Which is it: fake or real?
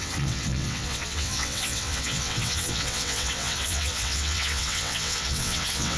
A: fake